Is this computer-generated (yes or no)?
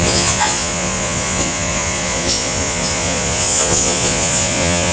yes